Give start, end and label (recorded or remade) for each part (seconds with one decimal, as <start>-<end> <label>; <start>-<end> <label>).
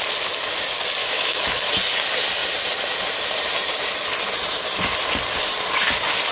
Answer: 0.0-1.0 recorded; 1.0-1.6 remade; 1.6-6.3 recorded